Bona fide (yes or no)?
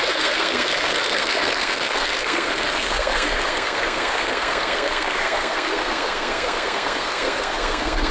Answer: no